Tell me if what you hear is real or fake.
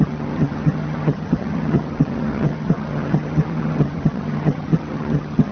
fake